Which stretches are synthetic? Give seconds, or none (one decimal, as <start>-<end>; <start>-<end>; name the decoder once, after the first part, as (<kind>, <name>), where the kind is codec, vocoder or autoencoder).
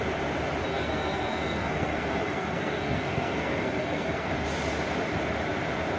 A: 0.7-4.3 (codec, SNAC)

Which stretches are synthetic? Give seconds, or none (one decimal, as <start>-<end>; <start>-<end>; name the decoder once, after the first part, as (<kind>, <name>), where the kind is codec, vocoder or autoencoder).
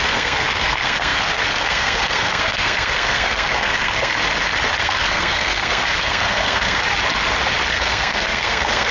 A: 0.0-4.1 (codec, SNAC); 4.8-6.8; 7.7-8.9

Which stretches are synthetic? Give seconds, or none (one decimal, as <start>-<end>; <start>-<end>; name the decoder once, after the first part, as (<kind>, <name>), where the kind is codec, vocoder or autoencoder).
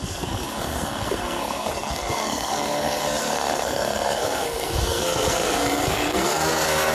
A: 0.0-6.9 (codec, SNAC)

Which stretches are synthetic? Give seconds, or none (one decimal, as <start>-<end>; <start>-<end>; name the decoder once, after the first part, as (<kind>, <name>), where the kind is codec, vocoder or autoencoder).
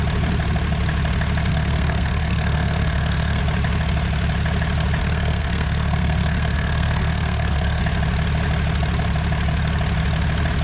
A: 1.5-3.4 (codec, SNAC); 5.0-7.8